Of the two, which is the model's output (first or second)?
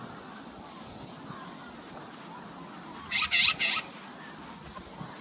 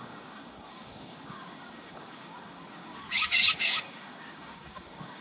second